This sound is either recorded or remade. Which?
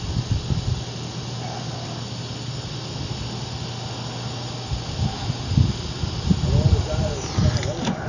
recorded